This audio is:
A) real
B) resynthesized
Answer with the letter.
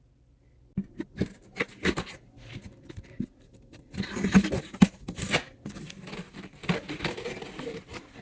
A